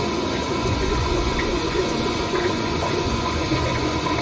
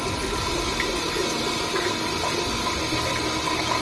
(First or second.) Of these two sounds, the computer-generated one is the first